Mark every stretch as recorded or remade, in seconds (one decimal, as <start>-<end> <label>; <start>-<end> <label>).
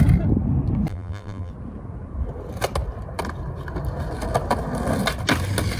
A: 0.0-0.9 recorded; 0.9-1.5 remade; 1.5-5.8 recorded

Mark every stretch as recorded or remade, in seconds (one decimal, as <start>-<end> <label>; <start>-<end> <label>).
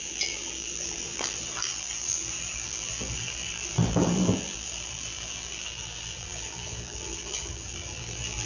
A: 0.0-8.5 remade